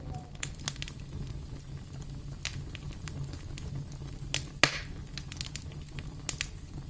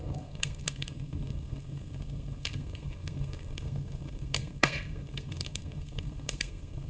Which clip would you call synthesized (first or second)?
second